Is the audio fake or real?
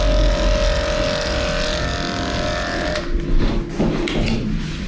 real